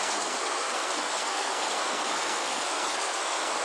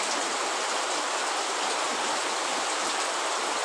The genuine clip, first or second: second